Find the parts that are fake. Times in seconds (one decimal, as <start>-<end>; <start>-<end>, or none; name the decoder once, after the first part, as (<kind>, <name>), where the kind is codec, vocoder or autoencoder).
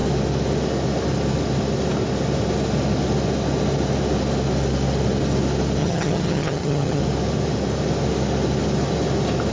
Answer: 5.8-7.0 (vocoder, HiFi-GAN)